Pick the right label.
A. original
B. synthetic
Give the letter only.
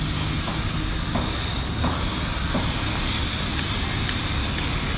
A